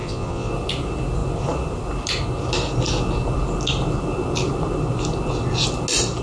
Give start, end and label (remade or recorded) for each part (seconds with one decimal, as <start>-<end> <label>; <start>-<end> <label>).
0.0-0.5 remade; 0.5-6.2 recorded